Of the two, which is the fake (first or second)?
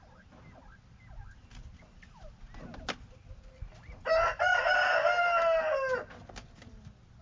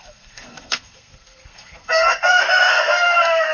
second